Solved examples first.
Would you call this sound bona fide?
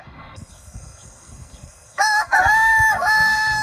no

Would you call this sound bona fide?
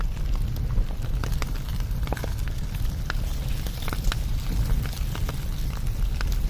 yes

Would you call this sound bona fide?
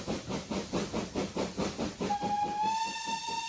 yes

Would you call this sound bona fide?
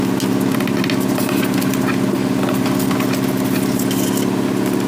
yes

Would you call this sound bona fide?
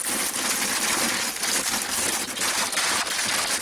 yes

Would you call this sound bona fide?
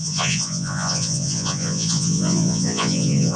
no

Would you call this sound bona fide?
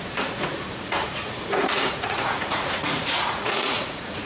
no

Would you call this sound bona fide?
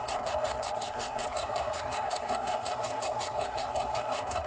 no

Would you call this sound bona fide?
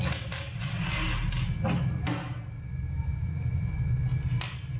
yes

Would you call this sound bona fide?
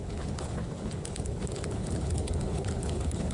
no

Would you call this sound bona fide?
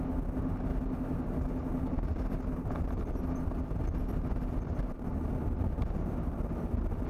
yes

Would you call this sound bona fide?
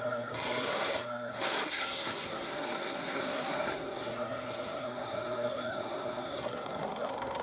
no